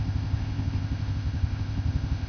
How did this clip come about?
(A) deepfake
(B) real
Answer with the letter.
A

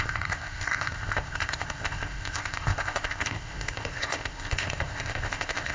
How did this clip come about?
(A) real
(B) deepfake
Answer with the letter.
B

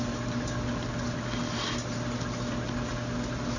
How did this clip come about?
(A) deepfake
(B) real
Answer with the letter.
B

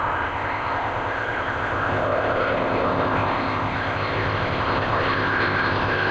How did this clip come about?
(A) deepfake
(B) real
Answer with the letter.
A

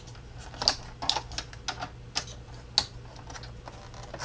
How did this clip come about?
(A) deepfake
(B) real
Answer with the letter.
B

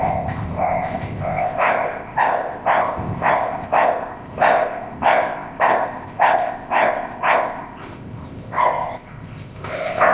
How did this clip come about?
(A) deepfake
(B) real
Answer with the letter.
A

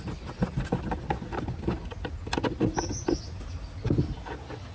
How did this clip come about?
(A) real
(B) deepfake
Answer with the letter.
A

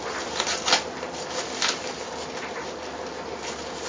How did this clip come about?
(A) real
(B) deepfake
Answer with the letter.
A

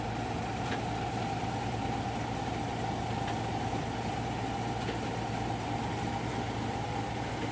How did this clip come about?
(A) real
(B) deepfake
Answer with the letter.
A